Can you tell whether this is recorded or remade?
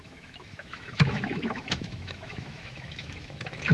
remade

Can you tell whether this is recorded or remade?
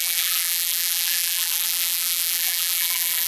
remade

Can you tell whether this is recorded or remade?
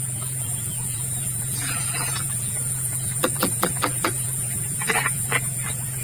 remade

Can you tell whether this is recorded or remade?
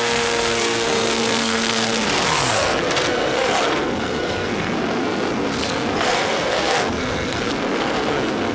remade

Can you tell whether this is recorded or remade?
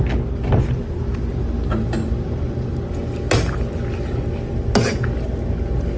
recorded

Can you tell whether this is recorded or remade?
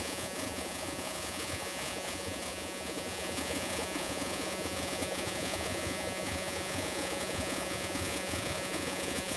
remade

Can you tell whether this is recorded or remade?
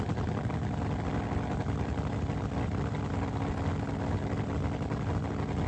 recorded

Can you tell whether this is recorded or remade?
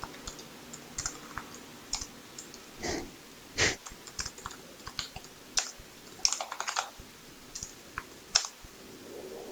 recorded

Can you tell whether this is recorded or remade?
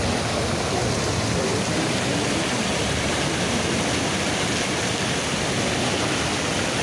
recorded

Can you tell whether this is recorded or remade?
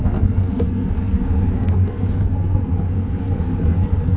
remade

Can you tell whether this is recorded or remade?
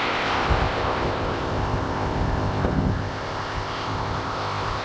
remade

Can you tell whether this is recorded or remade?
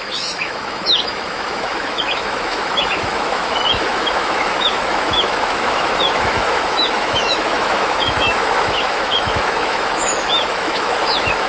remade